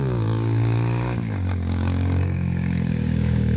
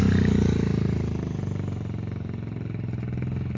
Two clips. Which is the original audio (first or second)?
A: second